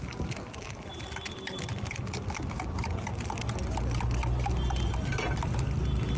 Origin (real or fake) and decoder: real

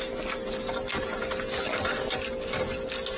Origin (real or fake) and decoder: real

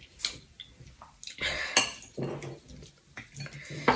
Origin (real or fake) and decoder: real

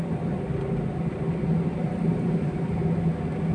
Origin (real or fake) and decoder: real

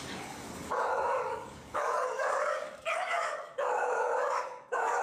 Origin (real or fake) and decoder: fake, codec, DAC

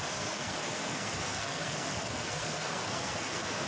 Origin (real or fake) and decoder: fake, codec, SNAC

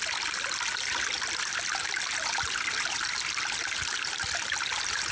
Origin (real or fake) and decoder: real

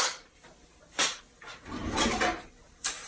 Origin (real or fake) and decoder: real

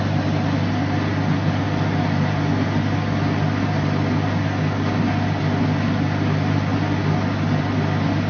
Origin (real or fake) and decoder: real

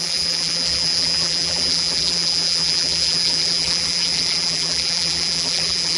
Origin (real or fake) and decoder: fake, vocoder, BigVGAN v2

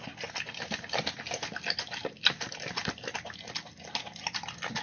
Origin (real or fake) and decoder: real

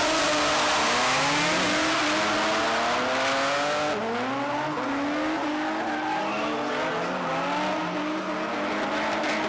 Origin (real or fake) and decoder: real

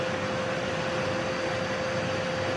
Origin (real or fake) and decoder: real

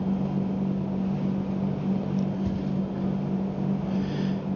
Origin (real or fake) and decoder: real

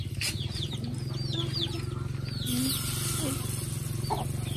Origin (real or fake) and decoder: real